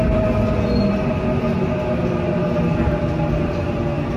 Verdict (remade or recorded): recorded